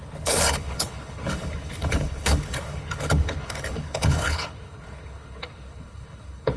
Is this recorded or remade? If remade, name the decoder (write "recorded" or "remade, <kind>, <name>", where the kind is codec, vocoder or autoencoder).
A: remade, codec, HILCodec